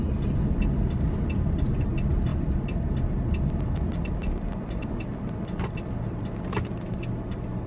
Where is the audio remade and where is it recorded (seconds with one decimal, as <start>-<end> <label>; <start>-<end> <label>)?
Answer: 0.0-7.7 recorded